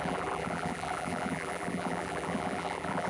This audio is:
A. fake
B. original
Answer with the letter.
A